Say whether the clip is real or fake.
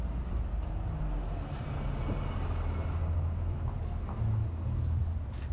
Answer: real